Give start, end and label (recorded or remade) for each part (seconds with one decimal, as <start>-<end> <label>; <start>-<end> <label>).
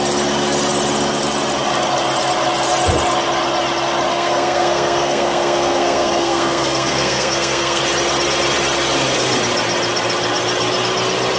0.0-4.1 recorded; 4.1-7.8 remade; 7.8-11.4 recorded